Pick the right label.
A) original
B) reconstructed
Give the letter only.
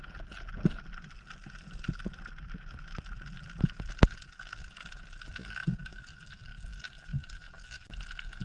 A